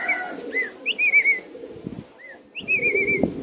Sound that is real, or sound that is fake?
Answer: real